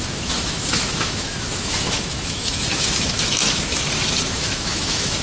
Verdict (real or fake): fake